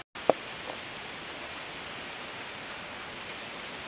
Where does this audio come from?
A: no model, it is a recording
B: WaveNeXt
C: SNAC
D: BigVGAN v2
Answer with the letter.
A